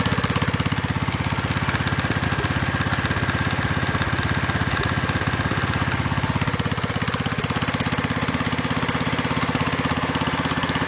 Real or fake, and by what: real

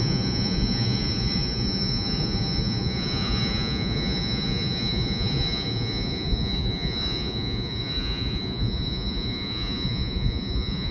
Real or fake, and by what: fake, vocoder, Vocos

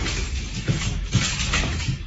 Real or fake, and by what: fake, codec, DAC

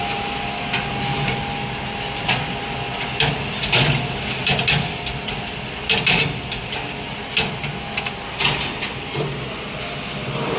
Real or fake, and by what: real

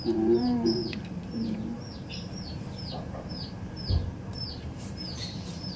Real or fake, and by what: fake, vocoder, BigVGAN v2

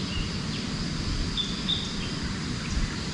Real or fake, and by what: real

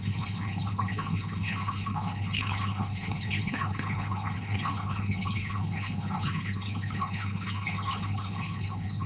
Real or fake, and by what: fake, codec, HILCodec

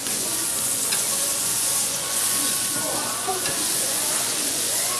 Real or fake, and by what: fake, vocoder, Vocos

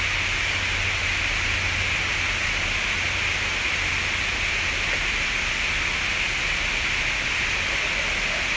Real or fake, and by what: real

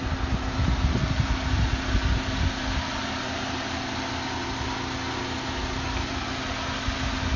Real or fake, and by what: real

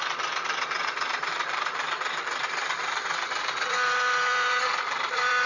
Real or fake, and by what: fake, vocoder, BigVGAN v2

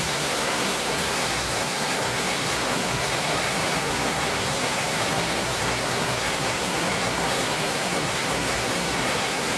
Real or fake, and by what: fake, codec, SNAC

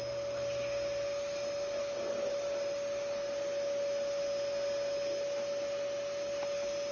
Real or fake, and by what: real